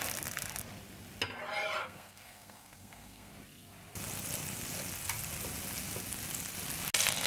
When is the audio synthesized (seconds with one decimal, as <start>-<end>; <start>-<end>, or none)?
1.8-3.3